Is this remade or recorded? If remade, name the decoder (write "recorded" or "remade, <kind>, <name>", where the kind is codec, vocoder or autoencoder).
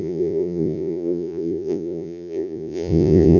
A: remade, vocoder, Vocos